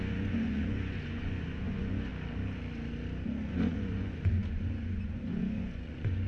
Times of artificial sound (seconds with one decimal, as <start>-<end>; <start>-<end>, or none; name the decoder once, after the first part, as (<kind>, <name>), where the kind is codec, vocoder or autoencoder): 0.0-2.1 (vocoder, Vocos); 3.5-6.3